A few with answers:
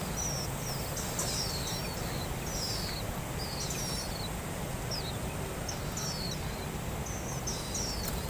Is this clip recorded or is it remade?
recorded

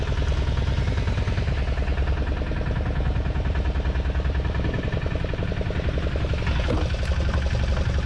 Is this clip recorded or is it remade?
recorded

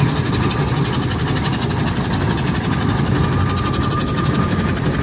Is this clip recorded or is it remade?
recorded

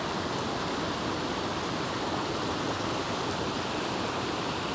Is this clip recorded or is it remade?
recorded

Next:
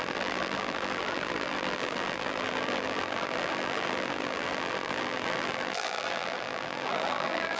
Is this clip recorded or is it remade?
remade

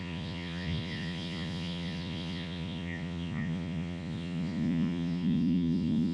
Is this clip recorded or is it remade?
remade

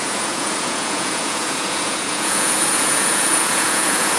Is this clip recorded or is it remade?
remade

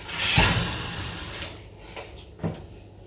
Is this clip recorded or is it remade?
recorded